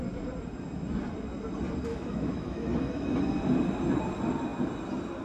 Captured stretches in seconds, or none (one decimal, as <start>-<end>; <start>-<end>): 0.0-1.9; 3.2-5.2